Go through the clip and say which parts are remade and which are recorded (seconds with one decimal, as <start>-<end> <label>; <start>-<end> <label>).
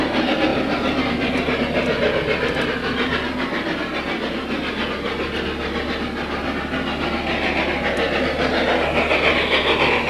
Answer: 0.0-10.1 recorded